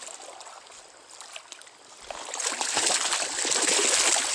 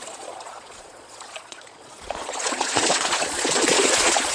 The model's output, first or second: second